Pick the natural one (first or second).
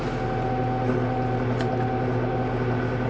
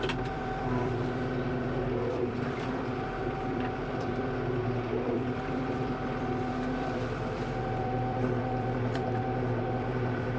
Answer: first